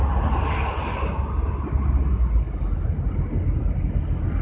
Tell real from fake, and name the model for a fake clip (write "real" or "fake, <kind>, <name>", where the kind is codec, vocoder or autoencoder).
real